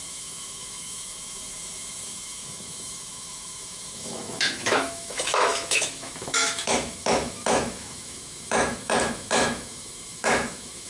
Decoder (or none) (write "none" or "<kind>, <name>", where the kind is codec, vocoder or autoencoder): autoencoder, DAC-VAE